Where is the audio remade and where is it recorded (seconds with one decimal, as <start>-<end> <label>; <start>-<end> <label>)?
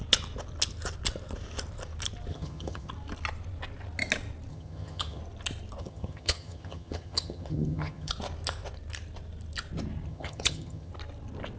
0.0-2.3 recorded; 2.3-2.9 remade; 2.9-4.5 recorded; 4.5-5.2 remade; 5.2-5.8 recorded; 5.8-8.1 remade; 8.1-10.1 recorded; 10.1-10.9 remade; 10.9-11.6 recorded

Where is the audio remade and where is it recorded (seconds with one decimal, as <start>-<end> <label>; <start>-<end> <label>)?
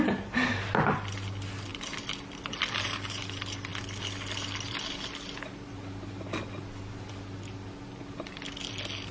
0.0-9.1 recorded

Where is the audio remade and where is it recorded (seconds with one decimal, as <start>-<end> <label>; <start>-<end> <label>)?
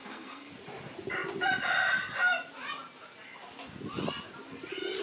0.0-0.5 remade; 0.5-5.0 recorded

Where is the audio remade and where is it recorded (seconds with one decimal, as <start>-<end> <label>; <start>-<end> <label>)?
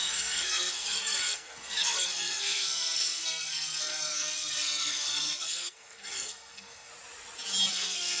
0.0-6.9 remade; 6.9-7.7 recorded; 7.7-8.2 remade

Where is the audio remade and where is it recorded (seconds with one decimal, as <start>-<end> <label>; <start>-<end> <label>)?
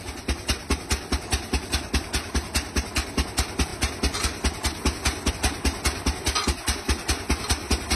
0.0-8.0 recorded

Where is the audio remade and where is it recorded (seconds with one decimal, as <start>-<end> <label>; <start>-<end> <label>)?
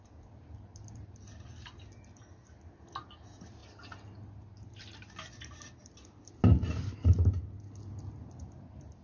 0.0-9.0 recorded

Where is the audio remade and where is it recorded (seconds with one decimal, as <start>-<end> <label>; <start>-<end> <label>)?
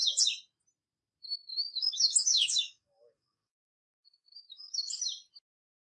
0.0-1.5 recorded; 1.5-5.0 remade; 5.0-5.8 recorded